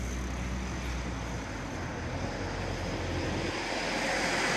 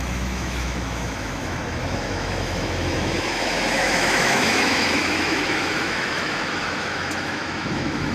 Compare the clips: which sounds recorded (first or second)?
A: first